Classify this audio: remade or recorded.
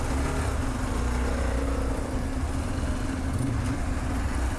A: recorded